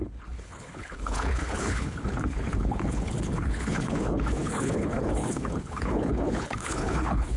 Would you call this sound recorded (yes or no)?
no